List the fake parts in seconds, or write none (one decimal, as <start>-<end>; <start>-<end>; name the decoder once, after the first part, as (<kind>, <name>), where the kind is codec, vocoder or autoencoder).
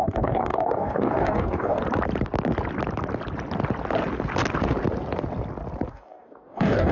0.0-1.8 (codec, DAC); 5.9-6.9